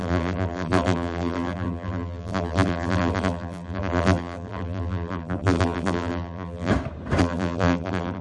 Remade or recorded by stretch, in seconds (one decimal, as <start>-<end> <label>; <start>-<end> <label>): 0.0-6.7 remade; 6.7-7.2 recorded; 7.2-8.2 remade